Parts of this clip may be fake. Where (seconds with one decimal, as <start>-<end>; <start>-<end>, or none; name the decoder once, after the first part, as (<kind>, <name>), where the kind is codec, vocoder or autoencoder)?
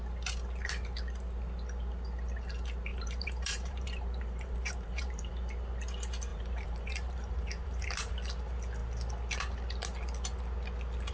2.9-5.3 (vocoder, BigVGAN v2); 6.3-8.1